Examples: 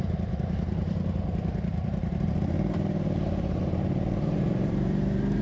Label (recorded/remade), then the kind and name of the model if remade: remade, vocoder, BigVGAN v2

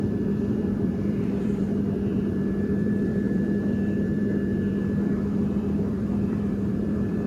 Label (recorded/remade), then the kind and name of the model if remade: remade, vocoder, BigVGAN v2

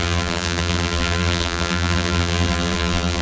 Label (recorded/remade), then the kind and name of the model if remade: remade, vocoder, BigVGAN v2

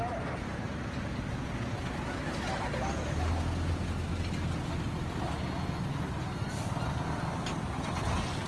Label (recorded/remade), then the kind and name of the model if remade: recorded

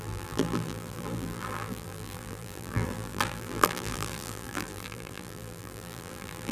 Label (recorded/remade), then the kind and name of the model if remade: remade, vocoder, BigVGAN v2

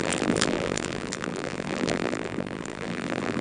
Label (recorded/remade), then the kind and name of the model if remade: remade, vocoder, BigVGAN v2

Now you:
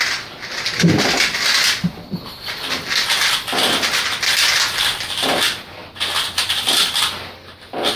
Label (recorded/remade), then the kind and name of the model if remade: recorded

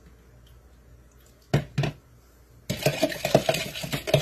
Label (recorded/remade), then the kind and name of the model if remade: recorded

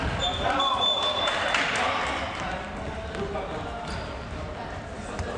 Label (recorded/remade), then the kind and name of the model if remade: recorded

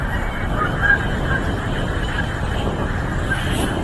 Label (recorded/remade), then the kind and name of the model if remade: recorded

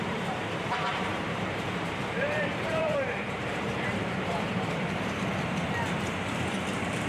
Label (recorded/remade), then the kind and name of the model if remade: remade, vocoder, BigVGAN v2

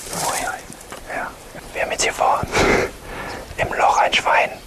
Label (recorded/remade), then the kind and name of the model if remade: remade, vocoder, BigVGAN v2